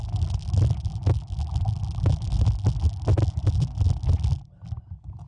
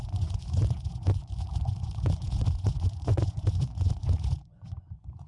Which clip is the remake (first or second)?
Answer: second